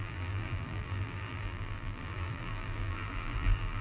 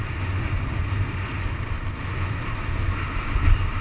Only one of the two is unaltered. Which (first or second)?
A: second